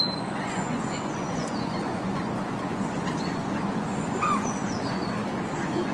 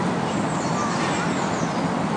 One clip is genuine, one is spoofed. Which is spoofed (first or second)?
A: first